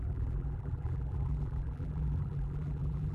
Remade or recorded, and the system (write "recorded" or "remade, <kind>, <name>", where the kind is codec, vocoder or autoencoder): remade, vocoder, BigVGAN v2